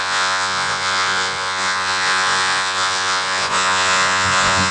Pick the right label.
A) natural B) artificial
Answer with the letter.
B